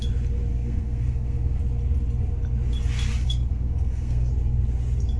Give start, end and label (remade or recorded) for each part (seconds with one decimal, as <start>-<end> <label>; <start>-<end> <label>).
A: 0.0-0.5 recorded; 0.5-1.6 remade; 1.6-3.2 recorded; 3.2-4.3 remade; 4.3-5.2 recorded